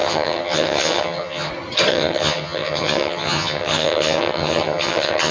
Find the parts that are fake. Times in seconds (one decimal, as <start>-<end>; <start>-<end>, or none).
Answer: 0.0-1.5; 1.9-5.3